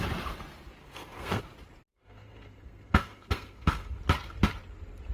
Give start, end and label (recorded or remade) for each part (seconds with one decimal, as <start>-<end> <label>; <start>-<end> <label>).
0.0-0.8 recorded; 0.8-1.4 remade; 1.4-1.9 recorded; 1.9-4.0 remade; 4.0-5.1 recorded